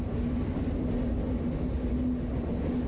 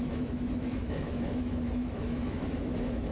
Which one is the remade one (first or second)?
second